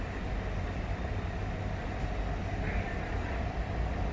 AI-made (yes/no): no